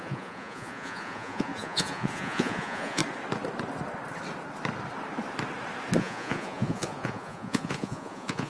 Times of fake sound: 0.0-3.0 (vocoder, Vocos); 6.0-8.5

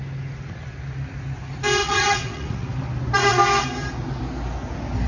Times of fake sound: 1.8-2.7 (vocoder, Vocos)